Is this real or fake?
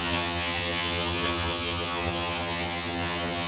fake